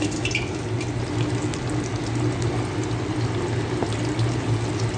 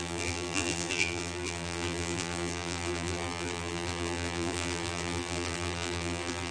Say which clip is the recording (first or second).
first